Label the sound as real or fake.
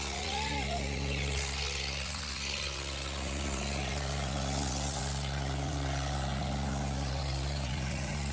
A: fake